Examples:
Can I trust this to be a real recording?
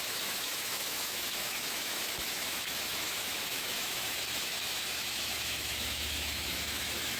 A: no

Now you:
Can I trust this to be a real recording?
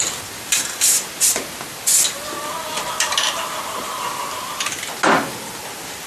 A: yes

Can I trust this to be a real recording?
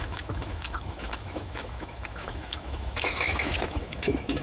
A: no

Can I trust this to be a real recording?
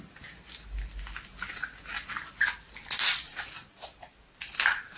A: yes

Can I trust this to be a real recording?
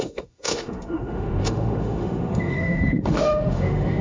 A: no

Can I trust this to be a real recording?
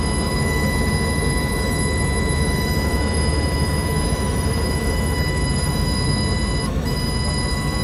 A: no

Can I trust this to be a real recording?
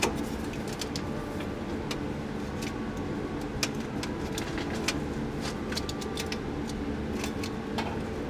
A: yes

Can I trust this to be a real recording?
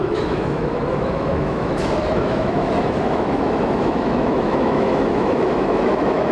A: no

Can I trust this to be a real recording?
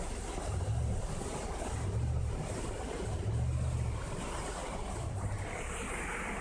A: yes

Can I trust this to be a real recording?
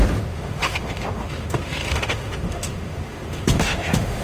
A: no